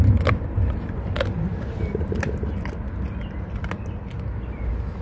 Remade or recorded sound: recorded